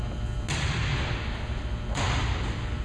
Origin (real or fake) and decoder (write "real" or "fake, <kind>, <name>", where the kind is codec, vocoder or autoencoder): real